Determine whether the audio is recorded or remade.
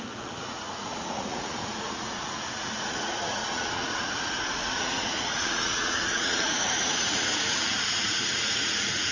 remade